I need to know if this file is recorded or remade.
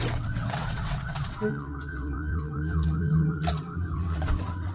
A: remade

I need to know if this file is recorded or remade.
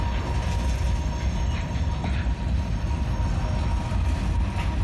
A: recorded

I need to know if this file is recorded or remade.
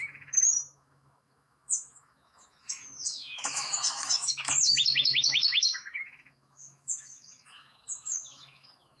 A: remade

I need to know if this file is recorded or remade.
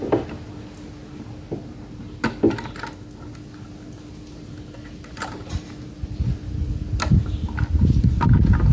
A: recorded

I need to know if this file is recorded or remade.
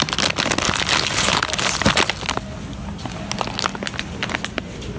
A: recorded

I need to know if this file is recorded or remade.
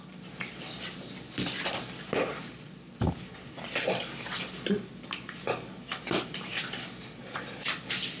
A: recorded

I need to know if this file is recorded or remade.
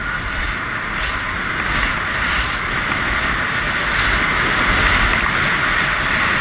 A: recorded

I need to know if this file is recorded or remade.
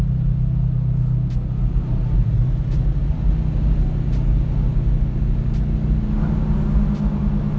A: recorded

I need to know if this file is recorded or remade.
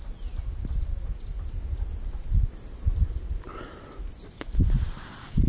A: recorded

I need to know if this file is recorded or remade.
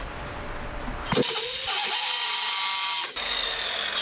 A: recorded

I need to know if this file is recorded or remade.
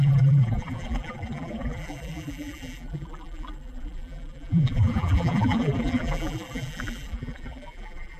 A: remade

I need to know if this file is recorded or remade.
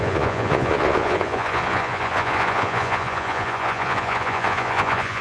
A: remade